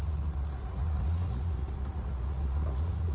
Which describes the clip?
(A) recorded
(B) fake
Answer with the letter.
B